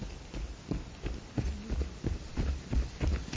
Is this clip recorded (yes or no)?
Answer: yes